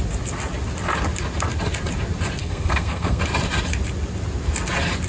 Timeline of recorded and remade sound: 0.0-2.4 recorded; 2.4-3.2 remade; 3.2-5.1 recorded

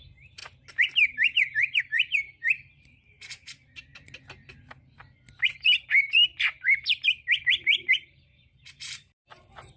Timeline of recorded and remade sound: 0.0-0.4 remade; 0.4-1.8 recorded; 1.8-3.9 remade; 3.9-7.4 recorded; 7.4-9.8 remade

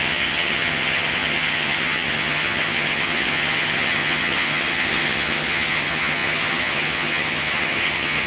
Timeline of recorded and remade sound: 0.0-8.3 remade

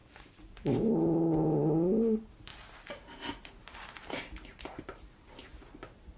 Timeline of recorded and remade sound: 0.0-1.3 remade; 1.3-2.5 recorded; 2.5-4.2 remade; 4.2-6.2 recorded

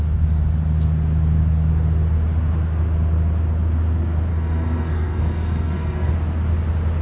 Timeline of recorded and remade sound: 0.0-4.3 recorded; 4.3-6.1 remade; 6.1-7.0 recorded